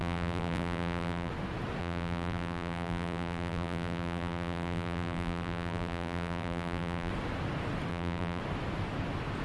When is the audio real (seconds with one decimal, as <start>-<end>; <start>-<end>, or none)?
1.3-1.8; 7.1-7.9; 8.4-9.4